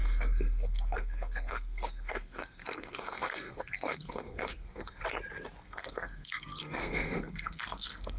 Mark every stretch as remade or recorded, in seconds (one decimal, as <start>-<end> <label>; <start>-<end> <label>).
0.0-5.0 remade; 5.0-5.6 recorded; 5.6-8.2 remade